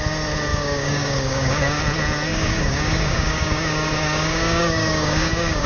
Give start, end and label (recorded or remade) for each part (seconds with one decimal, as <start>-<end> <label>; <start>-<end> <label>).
0.0-0.5 recorded; 0.5-1.8 remade; 1.8-2.3 recorded; 2.3-5.7 remade